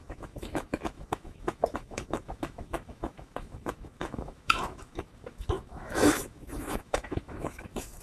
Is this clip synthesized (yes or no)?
yes